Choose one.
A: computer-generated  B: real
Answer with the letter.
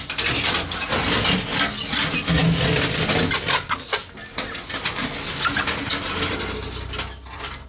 B